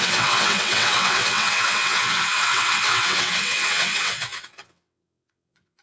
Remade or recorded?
remade